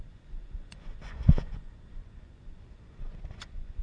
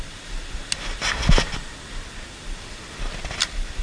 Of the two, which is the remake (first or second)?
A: first